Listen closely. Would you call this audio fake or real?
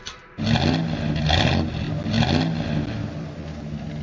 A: real